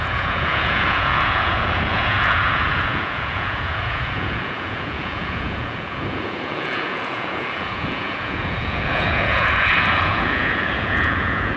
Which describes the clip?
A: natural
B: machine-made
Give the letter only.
B